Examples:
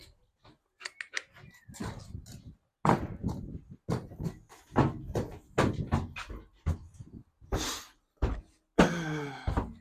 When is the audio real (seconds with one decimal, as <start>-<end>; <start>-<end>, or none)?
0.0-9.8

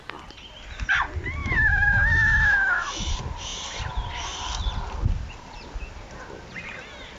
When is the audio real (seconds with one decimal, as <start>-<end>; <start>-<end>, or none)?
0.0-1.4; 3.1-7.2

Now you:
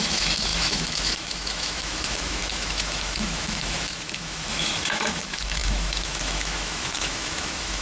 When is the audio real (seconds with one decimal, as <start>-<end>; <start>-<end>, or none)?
none

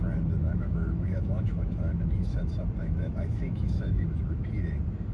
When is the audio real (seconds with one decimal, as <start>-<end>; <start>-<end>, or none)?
0.0-0.4; 2.4-2.8; 4.5-5.1